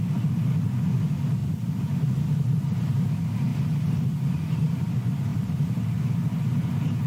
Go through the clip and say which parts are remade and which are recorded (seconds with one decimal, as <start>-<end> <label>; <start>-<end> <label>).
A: 0.0-1.4 recorded; 1.4-2.9 remade; 2.9-3.5 recorded; 3.5-4.7 remade; 4.7-5.3 recorded; 5.3-5.9 remade; 5.9-7.1 recorded